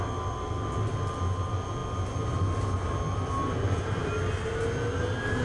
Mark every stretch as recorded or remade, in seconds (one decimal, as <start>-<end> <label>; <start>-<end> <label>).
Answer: 0.0-5.4 recorded

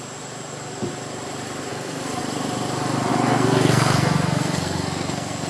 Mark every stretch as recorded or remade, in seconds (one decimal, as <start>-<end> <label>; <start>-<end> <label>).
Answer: 0.0-1.7 recorded; 1.7-2.2 remade; 2.2-3.1 recorded; 3.1-5.5 remade